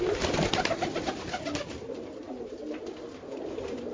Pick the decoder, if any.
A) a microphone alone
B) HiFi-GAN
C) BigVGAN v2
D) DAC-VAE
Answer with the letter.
A